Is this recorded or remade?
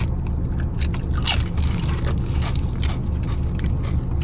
recorded